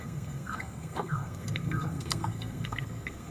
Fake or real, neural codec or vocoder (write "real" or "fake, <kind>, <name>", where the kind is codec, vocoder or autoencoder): fake, codec, SNAC